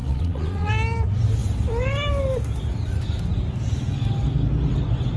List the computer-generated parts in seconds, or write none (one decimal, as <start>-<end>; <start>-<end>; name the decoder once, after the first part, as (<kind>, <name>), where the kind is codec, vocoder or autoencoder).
0.0-0.7 (vocoder, Vocos)